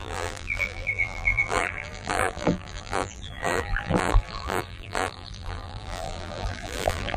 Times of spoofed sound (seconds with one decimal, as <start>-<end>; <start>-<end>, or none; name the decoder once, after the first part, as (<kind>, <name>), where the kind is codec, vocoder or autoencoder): 0.0-7.2 (vocoder, BigVGAN v2)